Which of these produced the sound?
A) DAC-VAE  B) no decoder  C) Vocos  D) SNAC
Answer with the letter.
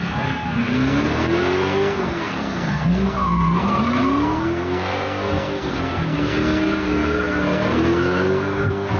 D